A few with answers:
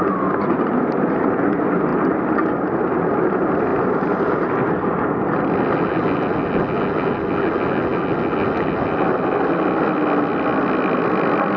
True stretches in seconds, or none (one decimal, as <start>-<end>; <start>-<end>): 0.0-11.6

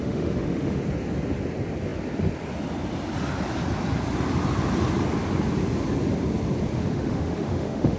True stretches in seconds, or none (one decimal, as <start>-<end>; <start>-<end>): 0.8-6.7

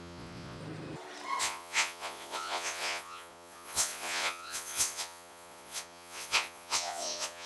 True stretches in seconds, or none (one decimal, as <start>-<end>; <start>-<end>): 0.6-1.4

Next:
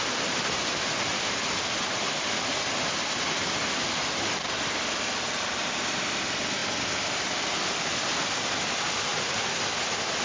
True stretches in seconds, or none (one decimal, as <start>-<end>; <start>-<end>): 2.5-10.2

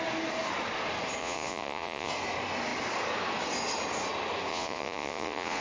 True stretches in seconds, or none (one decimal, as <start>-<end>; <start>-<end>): 0.0-1.2; 2.1-4.5

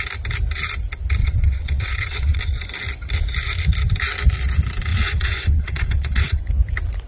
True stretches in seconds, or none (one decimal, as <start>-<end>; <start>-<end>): 0.0-1.2; 2.4-4.9; 6.4-7.1